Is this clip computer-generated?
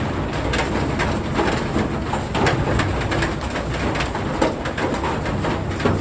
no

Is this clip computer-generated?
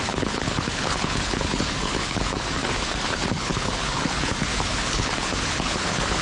yes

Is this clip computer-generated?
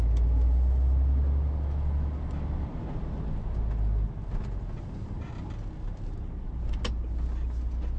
no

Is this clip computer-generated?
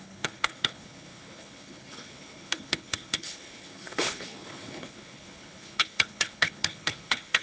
yes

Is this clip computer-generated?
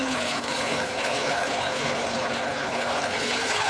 yes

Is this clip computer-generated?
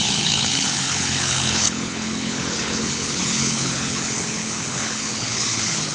yes